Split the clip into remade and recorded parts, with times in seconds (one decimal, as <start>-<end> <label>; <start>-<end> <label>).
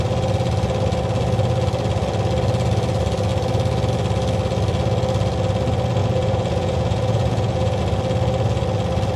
0.0-6.0 recorded; 6.0-7.8 remade; 7.8-9.2 recorded